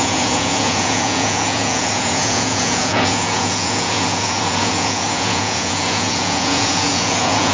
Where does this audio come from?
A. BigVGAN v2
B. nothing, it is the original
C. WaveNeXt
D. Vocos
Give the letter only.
D